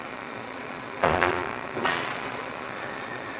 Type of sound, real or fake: fake